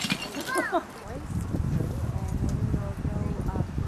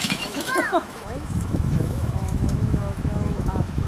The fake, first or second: second